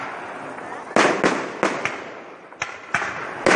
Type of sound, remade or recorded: recorded